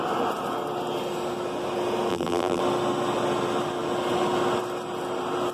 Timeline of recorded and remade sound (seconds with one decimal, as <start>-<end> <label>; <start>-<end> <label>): 0.0-2.1 recorded; 2.1-2.6 remade; 2.6-5.5 recorded